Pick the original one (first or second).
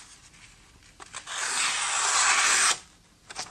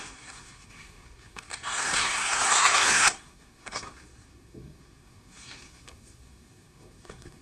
first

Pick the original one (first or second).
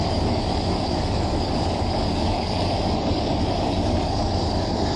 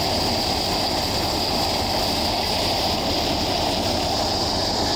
second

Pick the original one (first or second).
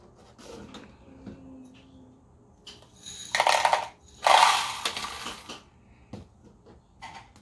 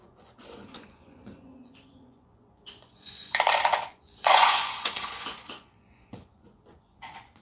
first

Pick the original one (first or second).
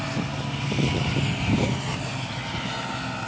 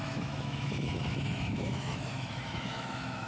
first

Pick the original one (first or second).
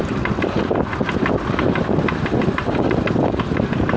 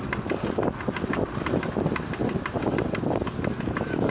second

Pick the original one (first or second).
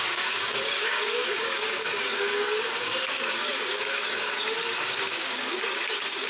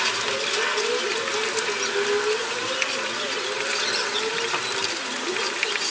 second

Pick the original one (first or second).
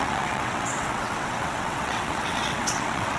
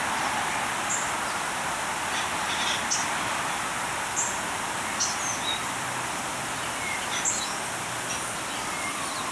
second